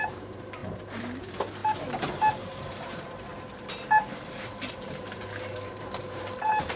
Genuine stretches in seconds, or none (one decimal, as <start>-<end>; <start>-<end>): 1.6-2.2; 3.3-4.3